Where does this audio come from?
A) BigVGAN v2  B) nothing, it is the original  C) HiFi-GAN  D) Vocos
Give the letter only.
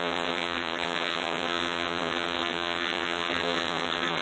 C